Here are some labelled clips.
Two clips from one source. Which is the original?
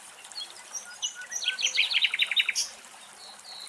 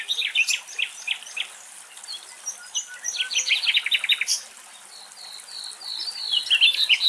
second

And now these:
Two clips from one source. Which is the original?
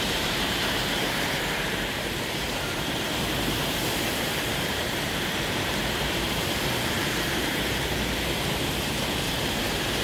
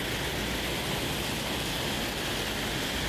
second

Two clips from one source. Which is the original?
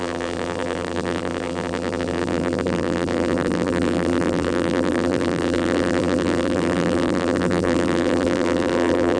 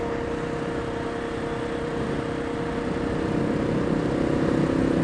second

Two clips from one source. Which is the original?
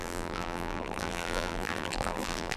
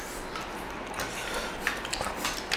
second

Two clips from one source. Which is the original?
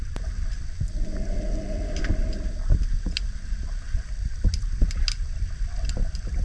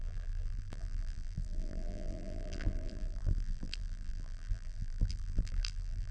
first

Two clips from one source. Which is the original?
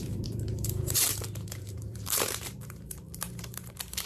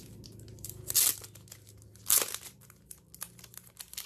second